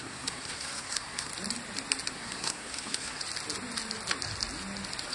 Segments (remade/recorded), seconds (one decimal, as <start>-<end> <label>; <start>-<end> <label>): 0.0-1.3 remade; 1.3-2.1 recorded; 2.1-3.2 remade; 3.2-5.1 recorded